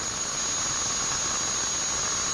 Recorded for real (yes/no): yes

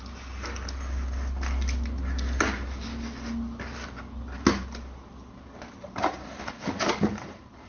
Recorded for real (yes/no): yes